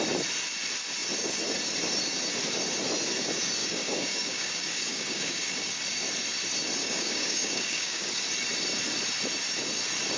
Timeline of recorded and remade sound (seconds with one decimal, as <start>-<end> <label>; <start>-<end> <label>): 0.0-3.6 recorded; 3.6-5.8 remade; 5.8-6.8 recorded; 6.8-8.2 remade; 8.2-10.2 recorded